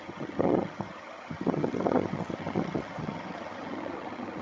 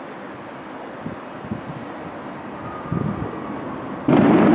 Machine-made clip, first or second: first